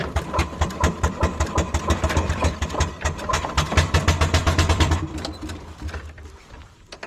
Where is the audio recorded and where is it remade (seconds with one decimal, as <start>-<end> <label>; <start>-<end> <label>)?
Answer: 0.0-4.0 remade; 4.0-4.4 recorded; 4.4-7.1 remade